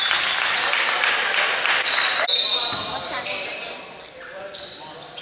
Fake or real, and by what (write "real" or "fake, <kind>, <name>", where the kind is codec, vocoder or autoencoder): real